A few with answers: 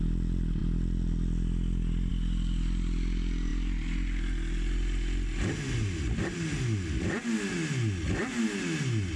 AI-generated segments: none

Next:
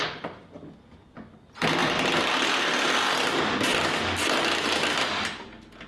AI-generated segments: none

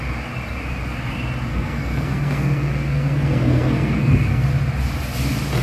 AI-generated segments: 1.5-4.5 (codec, SNAC)

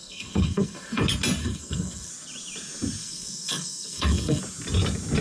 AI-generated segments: 0.0-1.0 (codec, SNAC); 1.4-2.1; 3.0-4.4

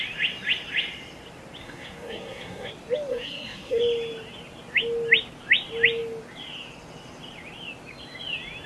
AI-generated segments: 1.6-2.7 (codec, SNAC); 3.1-3.8

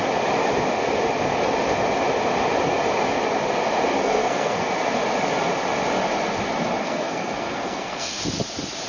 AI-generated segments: 4.0-4.7 (codec, SNAC); 6.8-8.2

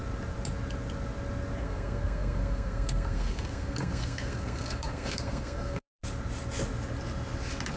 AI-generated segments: 1.6-6.0 (codec, SNAC)

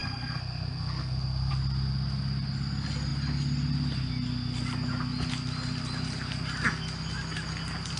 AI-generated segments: 0.0-1.5 (codec, SNAC)